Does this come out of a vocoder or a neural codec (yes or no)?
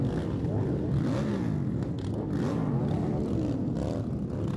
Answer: no